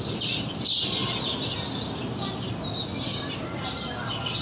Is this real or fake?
real